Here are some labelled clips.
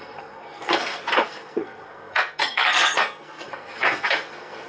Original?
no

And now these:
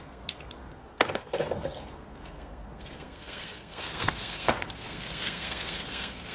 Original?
no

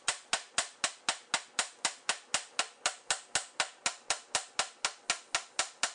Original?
yes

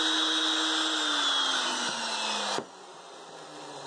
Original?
yes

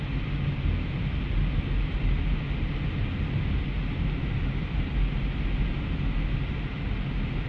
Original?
yes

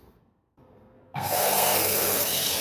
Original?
no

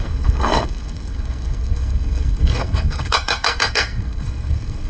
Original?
no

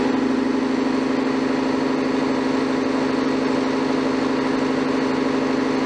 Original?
yes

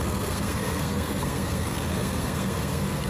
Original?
no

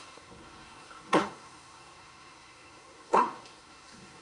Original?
no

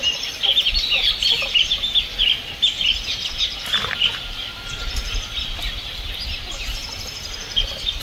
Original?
yes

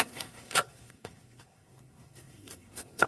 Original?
no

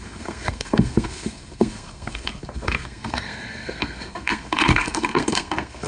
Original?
no